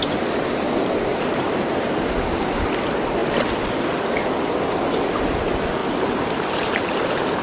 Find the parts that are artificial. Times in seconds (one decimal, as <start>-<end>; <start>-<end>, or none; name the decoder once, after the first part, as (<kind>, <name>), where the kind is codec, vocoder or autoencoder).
1.1-1.9 (vocoder, BigVGAN v2); 5.8-7.4